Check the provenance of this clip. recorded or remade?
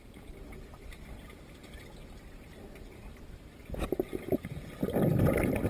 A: recorded